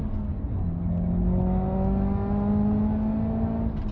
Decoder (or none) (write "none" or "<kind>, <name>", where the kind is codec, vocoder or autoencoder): none